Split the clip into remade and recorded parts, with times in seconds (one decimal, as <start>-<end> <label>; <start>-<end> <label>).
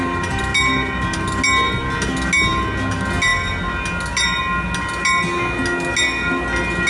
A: 0.0-6.9 recorded